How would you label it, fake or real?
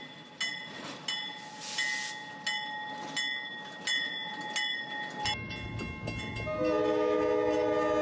real